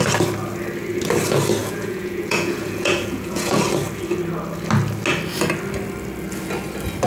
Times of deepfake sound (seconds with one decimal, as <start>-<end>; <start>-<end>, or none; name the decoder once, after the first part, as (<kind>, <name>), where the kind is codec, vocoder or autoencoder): 1.6-3.6 (vocoder, Vocos)